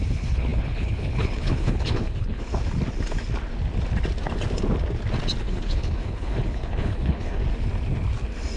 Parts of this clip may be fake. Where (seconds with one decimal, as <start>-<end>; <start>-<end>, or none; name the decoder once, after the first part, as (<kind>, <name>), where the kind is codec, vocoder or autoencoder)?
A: 0.0-2.5 (codec, HILCodec); 5.4-7.4

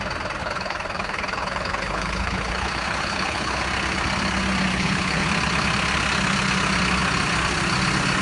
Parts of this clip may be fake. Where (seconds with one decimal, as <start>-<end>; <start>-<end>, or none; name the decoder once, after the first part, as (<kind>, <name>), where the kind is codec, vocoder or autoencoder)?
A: 0.4-3.6 (codec, HILCodec); 4.7-5.3

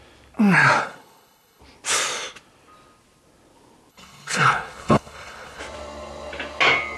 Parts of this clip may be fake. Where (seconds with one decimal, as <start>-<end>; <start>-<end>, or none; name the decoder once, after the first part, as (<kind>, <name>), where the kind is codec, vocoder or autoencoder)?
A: 0.8-1.6 (codec, HILCodec); 3.9-5.6

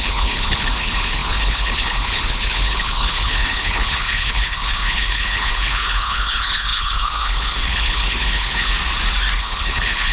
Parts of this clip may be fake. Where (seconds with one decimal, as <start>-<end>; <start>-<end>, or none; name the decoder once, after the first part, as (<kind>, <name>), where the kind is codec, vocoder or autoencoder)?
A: 0.0-8.7 (codec, HILCodec); 9.4-10.1

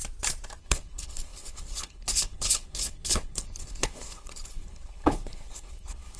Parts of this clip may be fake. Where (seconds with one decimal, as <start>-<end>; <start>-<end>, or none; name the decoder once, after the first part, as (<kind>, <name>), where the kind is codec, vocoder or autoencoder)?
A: 0.6-6.2 (codec, HILCodec)